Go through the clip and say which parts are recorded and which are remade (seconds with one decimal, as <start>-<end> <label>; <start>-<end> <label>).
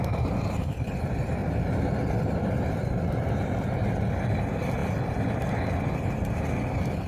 0.0-1.4 remade; 1.4-2.0 recorded; 2.0-4.8 remade; 4.8-7.1 recorded